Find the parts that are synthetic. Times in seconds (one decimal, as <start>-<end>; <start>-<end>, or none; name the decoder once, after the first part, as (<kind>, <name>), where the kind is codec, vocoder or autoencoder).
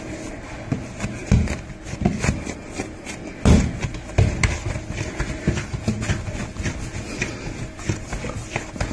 none